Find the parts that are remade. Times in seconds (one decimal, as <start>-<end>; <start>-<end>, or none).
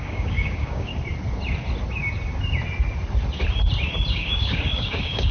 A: 0.0-0.9; 4.1-5.3